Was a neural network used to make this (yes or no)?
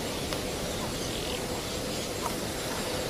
no